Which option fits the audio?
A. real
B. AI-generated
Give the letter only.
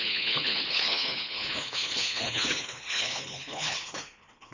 B